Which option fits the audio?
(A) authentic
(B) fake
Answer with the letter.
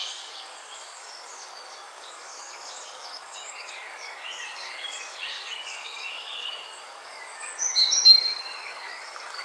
B